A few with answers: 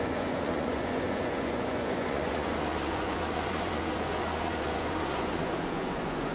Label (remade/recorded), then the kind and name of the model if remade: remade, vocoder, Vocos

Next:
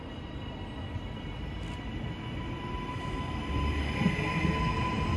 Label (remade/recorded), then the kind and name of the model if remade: recorded